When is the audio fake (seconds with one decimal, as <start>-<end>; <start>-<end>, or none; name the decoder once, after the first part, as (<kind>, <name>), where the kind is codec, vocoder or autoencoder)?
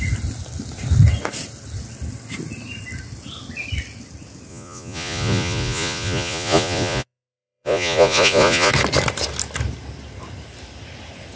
4.5-8.7 (vocoder, Vocos)